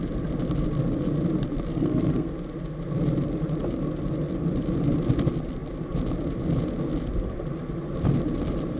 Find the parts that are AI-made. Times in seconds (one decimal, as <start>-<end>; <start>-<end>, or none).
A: 1.7-2.3